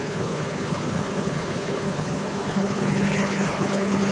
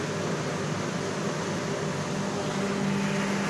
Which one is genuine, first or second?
second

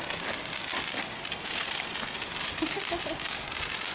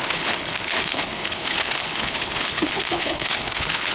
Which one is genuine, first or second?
first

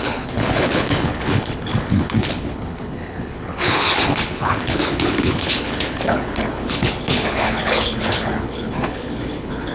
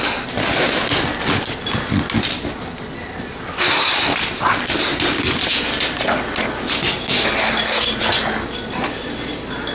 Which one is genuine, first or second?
second